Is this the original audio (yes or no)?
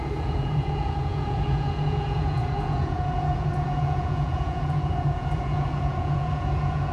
no